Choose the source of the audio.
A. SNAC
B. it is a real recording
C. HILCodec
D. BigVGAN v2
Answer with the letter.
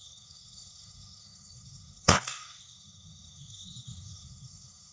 A